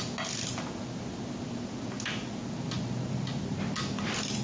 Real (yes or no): yes